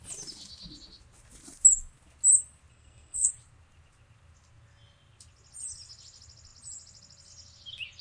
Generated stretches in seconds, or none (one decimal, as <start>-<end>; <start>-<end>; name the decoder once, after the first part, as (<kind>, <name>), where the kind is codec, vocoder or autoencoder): 2.7-3.3 (codec, SNAC)